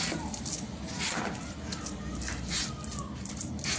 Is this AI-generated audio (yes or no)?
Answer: no